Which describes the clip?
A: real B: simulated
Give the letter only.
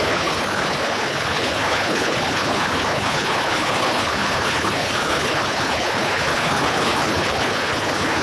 B